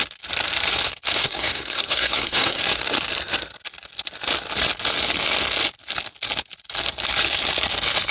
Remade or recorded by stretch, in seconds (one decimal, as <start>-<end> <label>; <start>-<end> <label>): 0.0-1.2 recorded; 1.2-2.6 remade; 2.6-8.1 recorded